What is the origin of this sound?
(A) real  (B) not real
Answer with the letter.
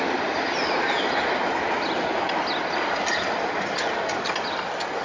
A